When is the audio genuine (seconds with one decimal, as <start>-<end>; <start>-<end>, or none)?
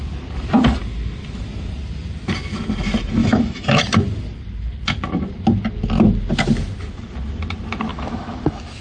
0.0-3.2; 3.8-7.9